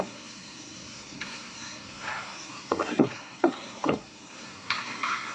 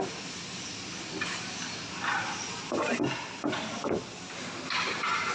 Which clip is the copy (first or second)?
first